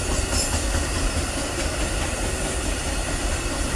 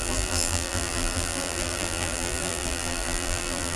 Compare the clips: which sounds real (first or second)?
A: first